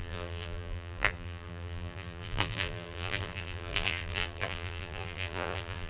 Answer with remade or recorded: remade